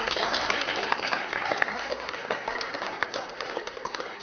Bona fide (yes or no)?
no